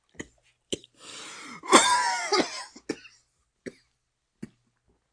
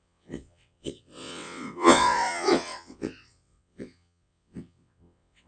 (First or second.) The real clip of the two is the first